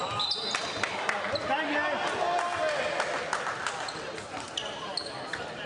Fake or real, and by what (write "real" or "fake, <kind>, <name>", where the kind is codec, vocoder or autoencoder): real